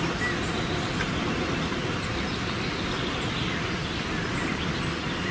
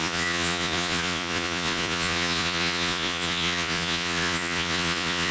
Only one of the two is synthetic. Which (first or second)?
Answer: second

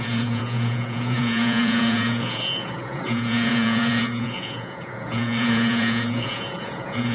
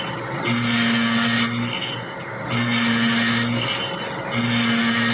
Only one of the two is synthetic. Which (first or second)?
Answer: first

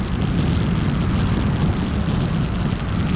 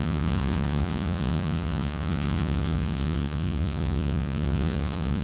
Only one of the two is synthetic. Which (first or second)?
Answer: second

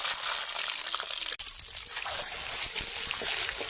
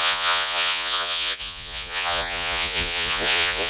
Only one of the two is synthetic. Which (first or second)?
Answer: second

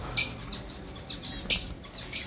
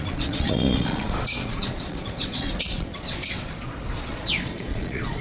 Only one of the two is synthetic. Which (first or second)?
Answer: second